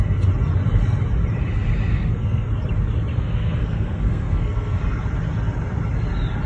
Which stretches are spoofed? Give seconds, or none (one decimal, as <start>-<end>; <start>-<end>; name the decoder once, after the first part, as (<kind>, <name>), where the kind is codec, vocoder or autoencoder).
1.9-2.5 (codec, SNAC); 3.1-4.8